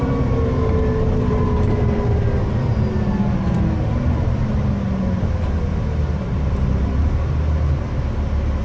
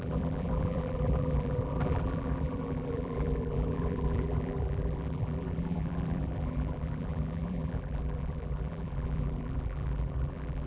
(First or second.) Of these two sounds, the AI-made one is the second